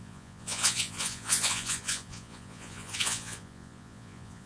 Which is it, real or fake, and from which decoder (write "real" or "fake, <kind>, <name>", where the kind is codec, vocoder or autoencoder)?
fake, vocoder, Vocos